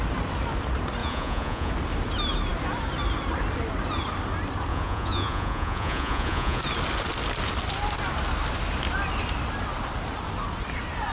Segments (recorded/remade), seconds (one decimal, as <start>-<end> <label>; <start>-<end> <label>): 0.0-1.0 recorded; 1.0-1.7 remade; 1.7-4.7 recorded; 4.7-6.6 remade; 6.6-11.1 recorded